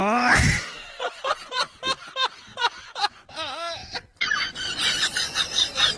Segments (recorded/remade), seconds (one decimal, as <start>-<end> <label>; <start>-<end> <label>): 0.0-1.8 remade; 1.8-2.5 recorded; 2.5-3.3 remade; 3.3-3.8 recorded; 3.8-5.4 remade; 5.4-6.0 recorded